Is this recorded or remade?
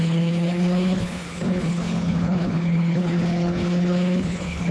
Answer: remade